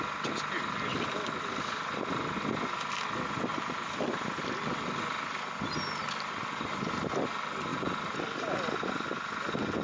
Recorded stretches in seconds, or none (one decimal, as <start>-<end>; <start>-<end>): 0.0-3.5; 4.1-6.0; 7.2-7.7; 8.2-9.8